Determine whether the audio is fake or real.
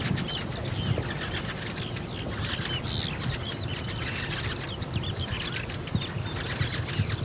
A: real